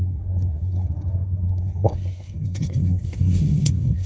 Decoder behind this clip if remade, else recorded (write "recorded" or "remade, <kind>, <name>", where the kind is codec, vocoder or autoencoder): remade, codec, SNAC